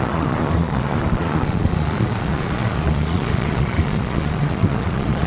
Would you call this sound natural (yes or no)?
no